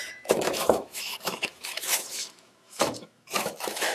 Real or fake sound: fake